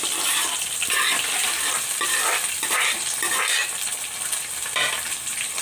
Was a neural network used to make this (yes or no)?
yes